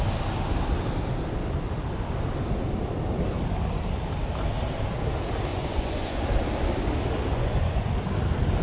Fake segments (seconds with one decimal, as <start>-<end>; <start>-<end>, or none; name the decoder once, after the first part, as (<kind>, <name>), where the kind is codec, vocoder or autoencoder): 5.5-6.2 (vocoder, Vocos); 7.3-7.9